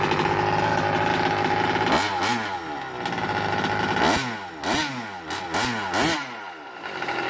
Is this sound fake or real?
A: real